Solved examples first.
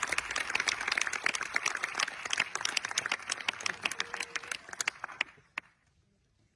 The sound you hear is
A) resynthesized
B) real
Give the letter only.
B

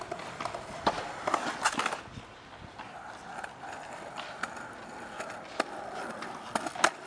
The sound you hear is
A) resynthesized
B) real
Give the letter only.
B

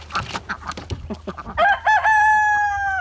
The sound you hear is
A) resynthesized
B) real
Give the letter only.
B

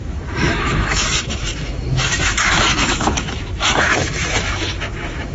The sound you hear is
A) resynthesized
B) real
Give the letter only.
A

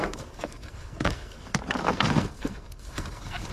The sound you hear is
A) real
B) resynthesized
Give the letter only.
B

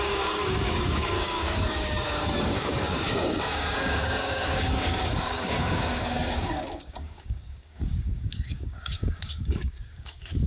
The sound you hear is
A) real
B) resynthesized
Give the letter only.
B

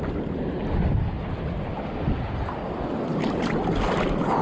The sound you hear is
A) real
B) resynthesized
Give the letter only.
A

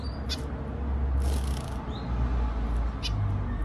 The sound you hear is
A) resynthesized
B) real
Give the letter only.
B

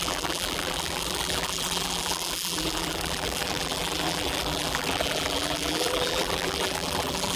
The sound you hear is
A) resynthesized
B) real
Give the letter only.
A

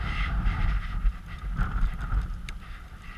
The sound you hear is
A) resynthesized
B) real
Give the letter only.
B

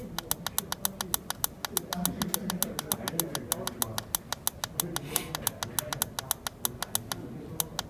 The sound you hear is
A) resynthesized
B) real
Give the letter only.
B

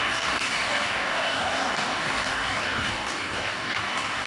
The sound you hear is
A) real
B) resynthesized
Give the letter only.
B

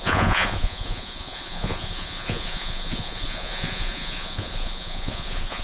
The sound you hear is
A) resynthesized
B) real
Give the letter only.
A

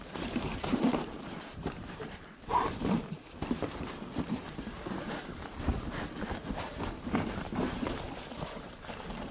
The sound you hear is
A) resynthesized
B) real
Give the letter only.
A